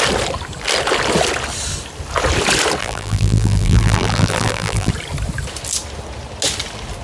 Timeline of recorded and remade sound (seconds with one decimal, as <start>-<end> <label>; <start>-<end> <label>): 0.0-2.8 recorded; 2.8-4.9 remade; 4.9-7.0 recorded